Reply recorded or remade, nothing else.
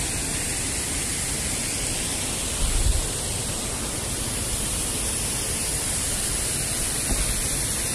recorded